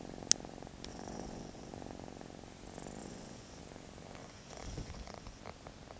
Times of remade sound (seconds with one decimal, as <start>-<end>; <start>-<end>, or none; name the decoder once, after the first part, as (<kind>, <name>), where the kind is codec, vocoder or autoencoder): 0.9-1.7 (vocoder, Vocos); 3.0-3.6; 4.2-5.4

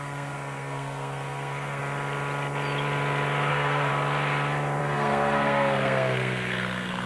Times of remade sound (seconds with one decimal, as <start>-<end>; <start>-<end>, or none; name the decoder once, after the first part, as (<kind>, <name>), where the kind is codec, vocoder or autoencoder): 0.0-1.8 (codec, SNAC); 3.5-3.9; 4.8-7.1